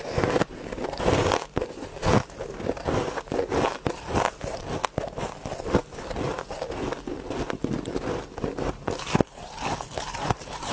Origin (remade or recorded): recorded